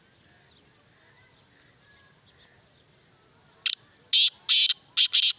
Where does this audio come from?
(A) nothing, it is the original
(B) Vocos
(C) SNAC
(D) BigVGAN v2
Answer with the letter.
A